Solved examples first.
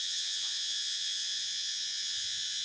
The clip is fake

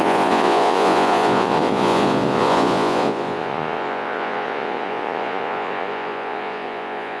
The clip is fake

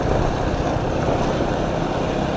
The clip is real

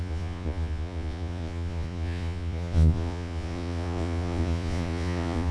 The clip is fake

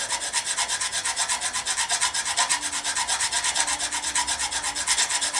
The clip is real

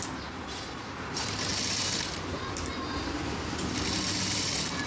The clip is real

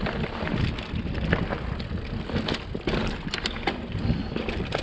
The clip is real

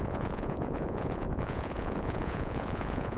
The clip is fake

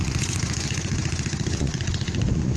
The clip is fake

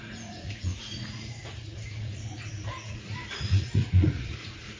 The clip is fake